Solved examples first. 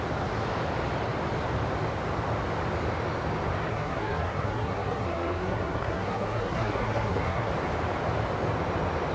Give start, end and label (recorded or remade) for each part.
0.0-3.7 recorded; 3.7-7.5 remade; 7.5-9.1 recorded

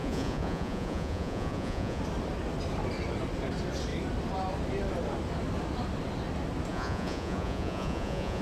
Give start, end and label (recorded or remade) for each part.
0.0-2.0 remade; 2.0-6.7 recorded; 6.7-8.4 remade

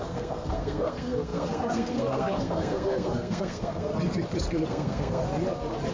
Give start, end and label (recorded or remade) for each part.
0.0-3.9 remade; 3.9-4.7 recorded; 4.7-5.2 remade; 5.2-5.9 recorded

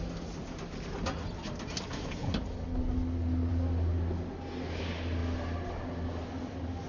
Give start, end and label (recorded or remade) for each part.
0.0-6.9 recorded